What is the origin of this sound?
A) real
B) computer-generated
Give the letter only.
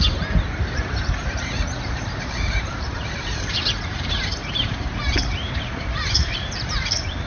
B